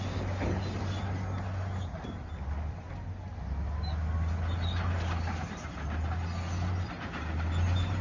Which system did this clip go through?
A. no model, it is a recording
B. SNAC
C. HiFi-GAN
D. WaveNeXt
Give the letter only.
A